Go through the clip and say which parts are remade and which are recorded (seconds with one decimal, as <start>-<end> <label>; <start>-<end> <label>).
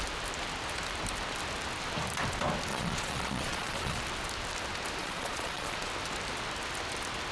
0.0-2.7 recorded; 2.7-4.0 remade; 4.0-5.0 recorded; 5.0-5.9 remade; 5.9-7.3 recorded